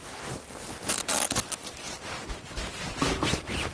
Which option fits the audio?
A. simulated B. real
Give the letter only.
B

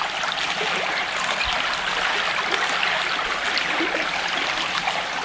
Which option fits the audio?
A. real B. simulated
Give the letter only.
A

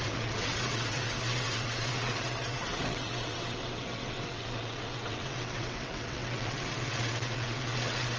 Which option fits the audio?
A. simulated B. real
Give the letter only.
A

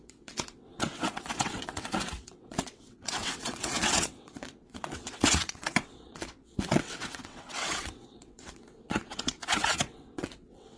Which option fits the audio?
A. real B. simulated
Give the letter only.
B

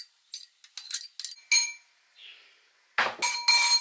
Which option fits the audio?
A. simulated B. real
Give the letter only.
B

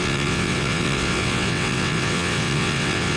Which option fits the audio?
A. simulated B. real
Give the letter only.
A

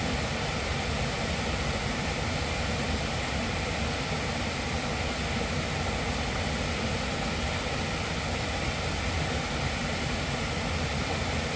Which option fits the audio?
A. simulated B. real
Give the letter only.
B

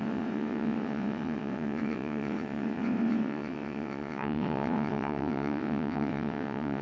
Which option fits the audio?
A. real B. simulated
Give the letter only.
B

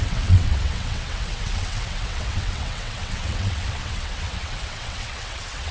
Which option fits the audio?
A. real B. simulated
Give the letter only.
B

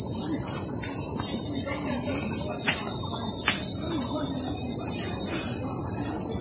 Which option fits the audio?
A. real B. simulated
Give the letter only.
A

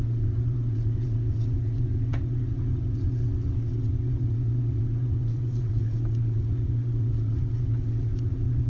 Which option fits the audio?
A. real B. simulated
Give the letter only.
B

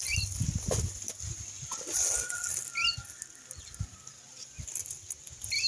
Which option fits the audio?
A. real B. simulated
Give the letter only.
A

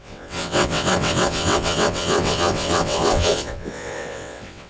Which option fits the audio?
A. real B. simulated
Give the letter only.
B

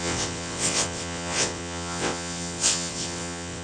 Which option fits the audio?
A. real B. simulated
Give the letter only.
B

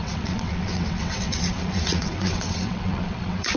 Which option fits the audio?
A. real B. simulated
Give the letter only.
B